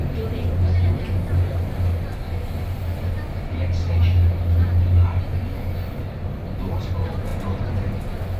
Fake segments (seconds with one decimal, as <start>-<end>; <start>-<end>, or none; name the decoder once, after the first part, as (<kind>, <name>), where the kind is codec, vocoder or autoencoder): none